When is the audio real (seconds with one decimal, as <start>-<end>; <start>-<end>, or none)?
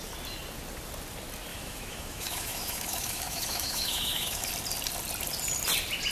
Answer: 0.0-1.5; 4.5-6.1